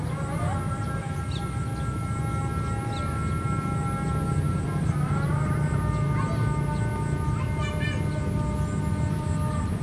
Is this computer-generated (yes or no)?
no